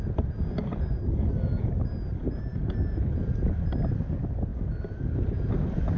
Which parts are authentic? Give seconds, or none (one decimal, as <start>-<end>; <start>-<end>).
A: 0.0-6.0